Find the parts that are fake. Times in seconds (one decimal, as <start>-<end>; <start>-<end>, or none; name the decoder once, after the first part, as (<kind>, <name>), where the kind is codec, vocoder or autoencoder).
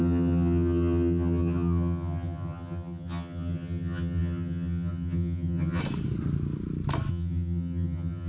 0.0-5.8 (vocoder, HiFi-GAN); 7.1-8.3